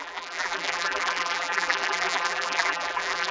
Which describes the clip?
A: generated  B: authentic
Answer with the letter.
A